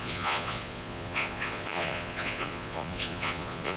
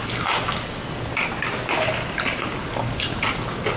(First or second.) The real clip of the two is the second